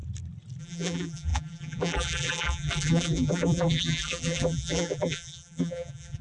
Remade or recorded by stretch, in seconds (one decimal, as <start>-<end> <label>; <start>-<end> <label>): 0.0-0.6 recorded; 0.6-6.2 remade